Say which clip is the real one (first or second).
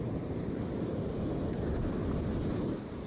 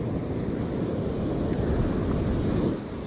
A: second